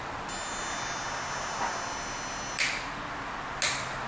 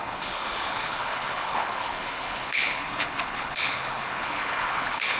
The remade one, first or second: second